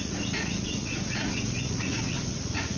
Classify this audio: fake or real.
fake